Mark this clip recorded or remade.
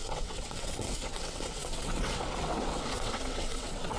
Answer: remade